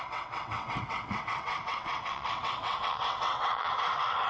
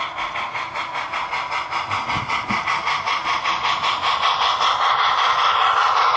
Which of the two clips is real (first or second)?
second